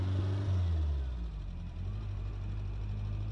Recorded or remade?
recorded